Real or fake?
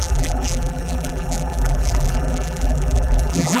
fake